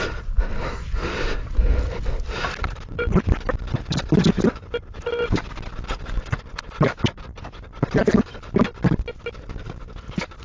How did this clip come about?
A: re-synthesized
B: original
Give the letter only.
B